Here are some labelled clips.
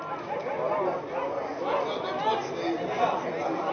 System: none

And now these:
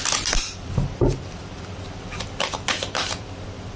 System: vocoder, BigVGAN v2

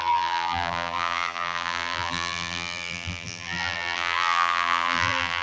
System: vocoder, BigVGAN v2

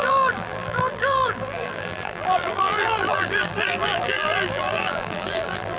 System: vocoder, BigVGAN v2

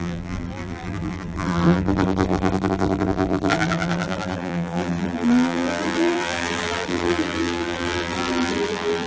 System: vocoder, BigVGAN v2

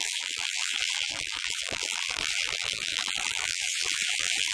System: vocoder, BigVGAN v2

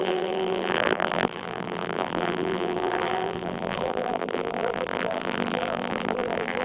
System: vocoder, BigVGAN v2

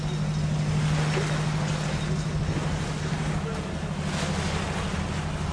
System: none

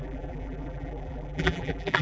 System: vocoder, BigVGAN v2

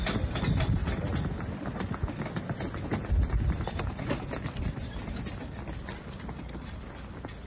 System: none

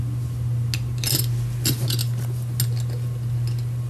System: none